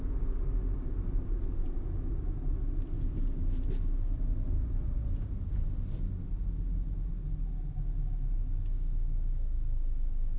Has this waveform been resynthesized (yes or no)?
no